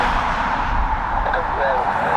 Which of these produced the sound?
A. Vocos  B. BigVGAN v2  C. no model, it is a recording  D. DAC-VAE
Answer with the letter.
B